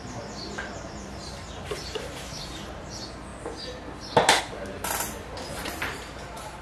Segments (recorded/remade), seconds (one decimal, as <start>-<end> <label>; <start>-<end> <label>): 0.0-2.9 remade; 2.9-5.6 recorded; 5.6-6.6 remade